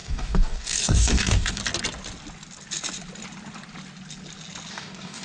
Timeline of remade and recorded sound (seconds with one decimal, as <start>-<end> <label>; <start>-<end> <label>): 0.0-1.6 remade; 1.6-4.7 recorded; 4.7-5.2 remade

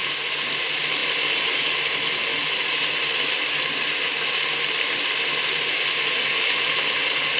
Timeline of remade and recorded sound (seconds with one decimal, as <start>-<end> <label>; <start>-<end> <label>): 0.0-7.4 recorded

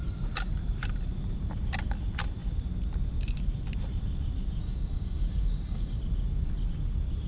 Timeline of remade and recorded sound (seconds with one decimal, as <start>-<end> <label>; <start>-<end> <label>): 0.0-4.6 recorded; 4.6-6.0 remade; 6.0-7.3 recorded

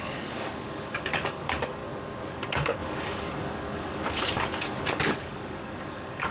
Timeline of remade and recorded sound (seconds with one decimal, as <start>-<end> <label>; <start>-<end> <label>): 0.0-1.8 remade; 1.8-2.3 recorded; 2.3-6.3 remade

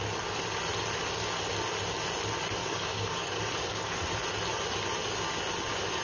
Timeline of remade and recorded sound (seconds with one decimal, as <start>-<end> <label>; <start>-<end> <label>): 0.0-2.6 recorded; 2.6-4.1 remade; 4.1-6.0 recorded

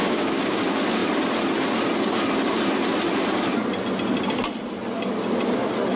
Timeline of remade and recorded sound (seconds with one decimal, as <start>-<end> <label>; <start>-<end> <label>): 0.0-0.6 remade; 0.6-6.0 recorded

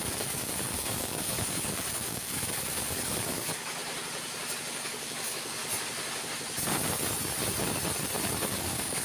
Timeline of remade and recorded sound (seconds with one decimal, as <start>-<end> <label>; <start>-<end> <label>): 0.0-3.8 remade; 3.8-4.7 recorded; 4.7-5.6 remade; 5.6-8.5 recorded; 8.5-9.0 remade